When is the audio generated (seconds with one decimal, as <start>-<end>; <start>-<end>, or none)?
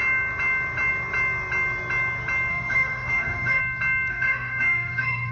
2.5-3.6; 4.1-5.3